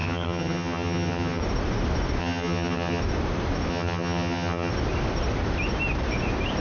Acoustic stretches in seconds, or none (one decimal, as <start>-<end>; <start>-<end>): 1.4-2.2; 3.0-3.7; 4.7-6.6